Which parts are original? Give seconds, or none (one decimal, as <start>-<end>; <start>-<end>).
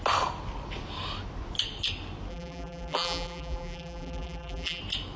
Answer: 0.0-2.3; 4.8-5.2